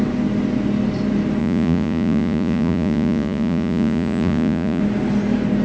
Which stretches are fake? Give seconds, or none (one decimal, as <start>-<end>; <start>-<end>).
1.4-4.8